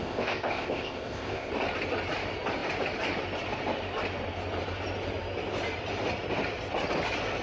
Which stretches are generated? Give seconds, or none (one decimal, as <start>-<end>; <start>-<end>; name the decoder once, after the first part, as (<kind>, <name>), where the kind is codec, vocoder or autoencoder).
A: 0.0-1.5 (codec, ZipCodec)